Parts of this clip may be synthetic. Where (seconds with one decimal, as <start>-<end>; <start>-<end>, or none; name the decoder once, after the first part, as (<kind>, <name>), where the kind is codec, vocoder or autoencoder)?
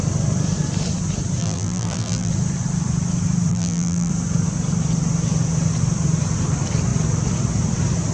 1.4-2.3 (vocoder, BigVGAN v2); 3.5-4.1